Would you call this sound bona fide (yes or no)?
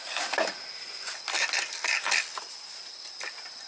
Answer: yes